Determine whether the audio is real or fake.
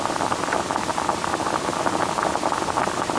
real